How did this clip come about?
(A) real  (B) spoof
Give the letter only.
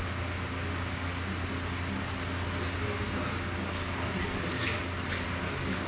A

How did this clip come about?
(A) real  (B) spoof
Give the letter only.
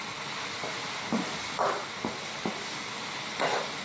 A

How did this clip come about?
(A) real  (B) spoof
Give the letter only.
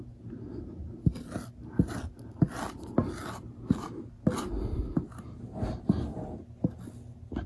A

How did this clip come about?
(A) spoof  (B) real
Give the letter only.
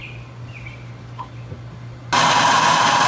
B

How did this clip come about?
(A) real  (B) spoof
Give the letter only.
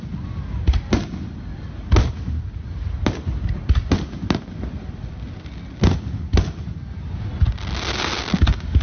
A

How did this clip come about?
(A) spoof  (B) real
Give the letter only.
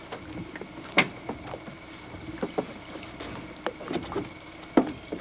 B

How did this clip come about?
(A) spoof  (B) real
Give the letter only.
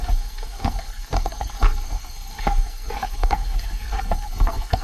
A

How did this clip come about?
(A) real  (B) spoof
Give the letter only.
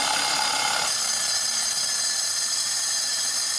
A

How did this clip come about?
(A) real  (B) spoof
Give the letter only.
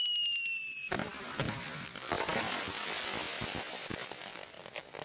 A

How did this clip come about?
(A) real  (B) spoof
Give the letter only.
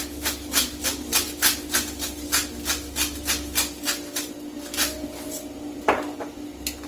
A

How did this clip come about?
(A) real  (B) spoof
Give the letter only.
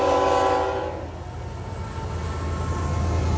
A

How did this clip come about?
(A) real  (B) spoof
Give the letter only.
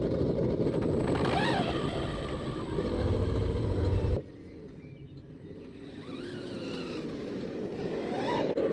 A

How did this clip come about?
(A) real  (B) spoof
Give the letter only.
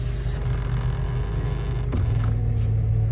A